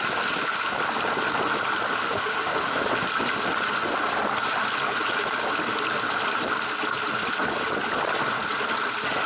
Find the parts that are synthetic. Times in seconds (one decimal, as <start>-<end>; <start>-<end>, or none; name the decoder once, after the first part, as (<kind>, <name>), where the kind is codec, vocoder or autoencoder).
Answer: 2.0-2.7 (autoencoder, DAC-VAE)